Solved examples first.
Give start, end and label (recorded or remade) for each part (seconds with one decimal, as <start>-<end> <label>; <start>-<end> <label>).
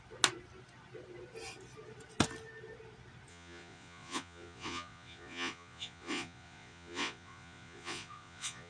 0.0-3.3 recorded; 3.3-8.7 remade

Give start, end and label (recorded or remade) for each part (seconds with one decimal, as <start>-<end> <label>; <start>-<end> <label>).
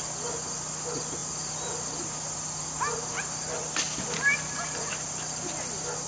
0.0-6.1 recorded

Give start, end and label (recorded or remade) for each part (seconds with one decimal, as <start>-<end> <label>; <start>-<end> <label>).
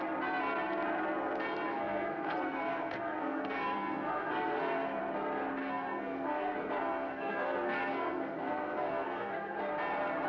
0.0-1.7 recorded; 1.7-5.0 remade; 5.0-5.6 recorded; 5.6-9.6 remade; 9.6-10.3 recorded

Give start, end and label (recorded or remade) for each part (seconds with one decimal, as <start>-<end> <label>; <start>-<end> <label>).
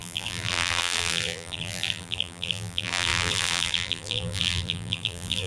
0.0-5.5 remade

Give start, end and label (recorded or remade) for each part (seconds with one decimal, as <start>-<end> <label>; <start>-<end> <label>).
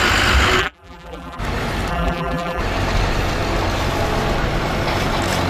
0.0-0.6 recorded; 0.6-1.4 remade; 1.4-1.9 recorded; 1.9-2.6 remade; 2.6-5.5 recorded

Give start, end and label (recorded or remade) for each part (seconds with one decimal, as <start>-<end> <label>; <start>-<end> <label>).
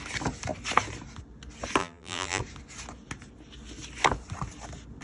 0.0-1.8 recorded; 1.8-2.4 remade; 2.4-5.0 recorded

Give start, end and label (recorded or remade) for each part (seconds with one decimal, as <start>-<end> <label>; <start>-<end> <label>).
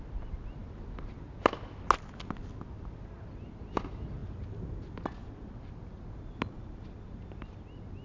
0.0-8.0 recorded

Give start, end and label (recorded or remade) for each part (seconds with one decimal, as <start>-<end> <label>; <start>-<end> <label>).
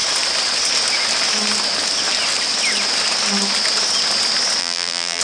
0.0-4.6 recorded; 4.6-5.2 remade